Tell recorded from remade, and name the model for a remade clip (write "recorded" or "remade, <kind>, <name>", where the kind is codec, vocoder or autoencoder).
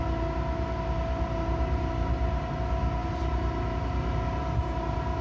recorded